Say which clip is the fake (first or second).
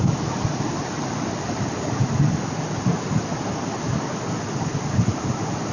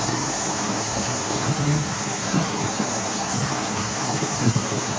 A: second